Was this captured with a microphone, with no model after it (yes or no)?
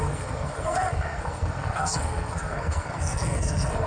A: no